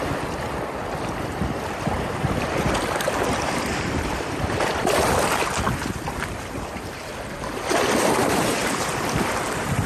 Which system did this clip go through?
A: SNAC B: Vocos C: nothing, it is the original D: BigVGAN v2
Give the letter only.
D